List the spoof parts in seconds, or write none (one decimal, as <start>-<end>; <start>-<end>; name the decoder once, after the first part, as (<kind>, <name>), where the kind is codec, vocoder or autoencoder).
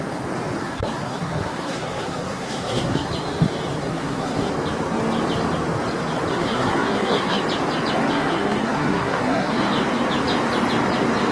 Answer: 0.6-3.1 (codec, SNAC); 3.8-4.5; 6.3-7.4; 8.1-9.6